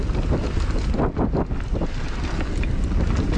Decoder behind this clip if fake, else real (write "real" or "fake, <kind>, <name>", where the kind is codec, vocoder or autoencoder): real